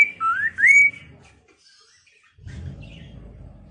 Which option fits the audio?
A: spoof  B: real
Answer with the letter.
B